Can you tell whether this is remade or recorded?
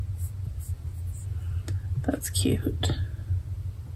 recorded